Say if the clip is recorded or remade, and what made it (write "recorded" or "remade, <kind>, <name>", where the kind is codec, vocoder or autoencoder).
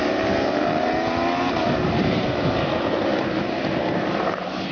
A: remade, vocoder, BigVGAN v2